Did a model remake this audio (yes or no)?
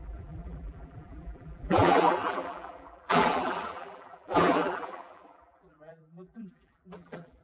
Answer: yes